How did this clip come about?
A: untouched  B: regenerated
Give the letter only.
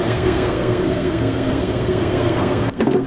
B